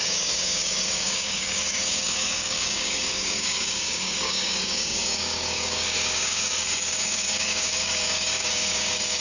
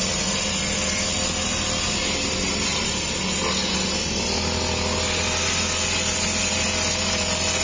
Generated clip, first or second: first